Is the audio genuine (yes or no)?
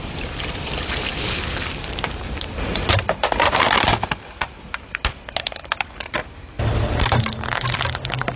yes